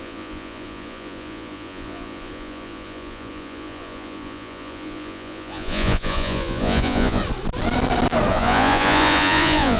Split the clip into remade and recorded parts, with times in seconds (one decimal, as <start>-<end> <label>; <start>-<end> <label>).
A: 0.0-7.2 remade; 7.2-8.3 recorded; 8.3-9.8 remade